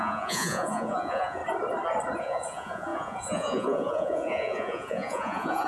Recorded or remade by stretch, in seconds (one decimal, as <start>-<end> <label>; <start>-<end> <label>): 0.0-1.4 remade; 1.4-2.2 recorded; 2.2-5.7 remade